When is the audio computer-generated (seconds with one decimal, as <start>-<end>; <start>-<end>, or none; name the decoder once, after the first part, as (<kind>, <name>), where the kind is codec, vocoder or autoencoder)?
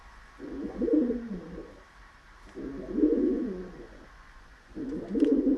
0.0-1.6 (vocoder, Vocos); 3.0-5.6